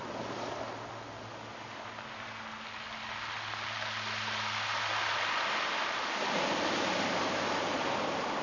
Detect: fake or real real